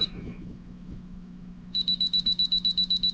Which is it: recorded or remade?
remade